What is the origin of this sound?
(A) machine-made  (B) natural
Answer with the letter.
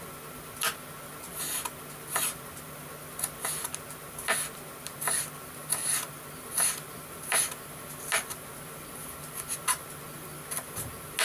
B